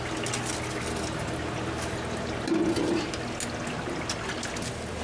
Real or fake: real